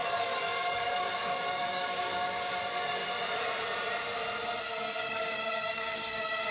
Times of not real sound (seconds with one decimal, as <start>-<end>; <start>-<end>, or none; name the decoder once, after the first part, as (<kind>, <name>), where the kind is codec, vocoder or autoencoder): 0.0-3.0 (codec, DAC); 4.6-6.5